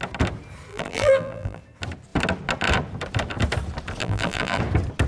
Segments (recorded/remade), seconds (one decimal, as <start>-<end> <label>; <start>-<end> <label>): 0.0-0.7 recorded; 0.7-1.6 remade; 1.6-4.0 recorded; 4.0-4.6 remade; 4.6-5.1 recorded